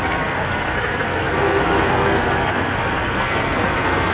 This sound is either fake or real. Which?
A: fake